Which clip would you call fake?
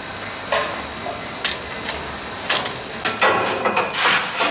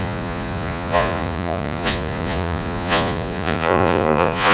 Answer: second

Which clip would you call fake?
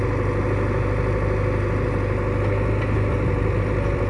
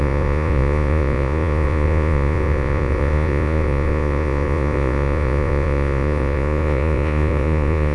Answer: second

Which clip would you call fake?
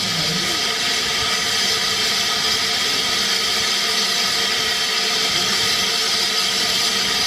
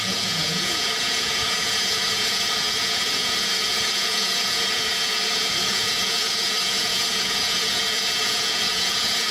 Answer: second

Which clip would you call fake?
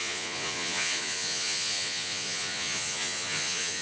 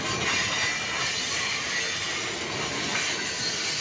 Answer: first